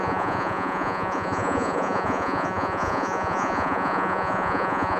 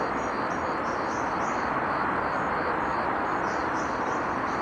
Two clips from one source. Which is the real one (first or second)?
second